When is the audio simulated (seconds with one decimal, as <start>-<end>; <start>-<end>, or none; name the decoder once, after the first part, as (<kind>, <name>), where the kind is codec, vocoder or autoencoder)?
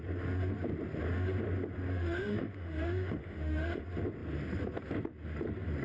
1.9-3.8 (autoencoder, DAC-VAE)